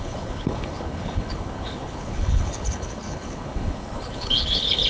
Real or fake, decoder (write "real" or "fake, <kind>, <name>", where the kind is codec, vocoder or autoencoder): fake, codec, HILCodec